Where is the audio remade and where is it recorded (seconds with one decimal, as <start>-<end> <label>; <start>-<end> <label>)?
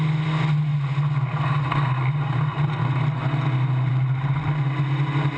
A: 0.0-5.4 recorded